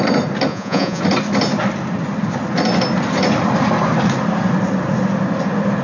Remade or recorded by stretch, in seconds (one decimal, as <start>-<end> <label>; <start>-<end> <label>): 0.0-0.5 recorded; 0.5-1.0 remade; 1.0-5.8 recorded